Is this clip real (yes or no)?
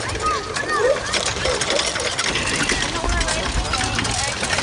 yes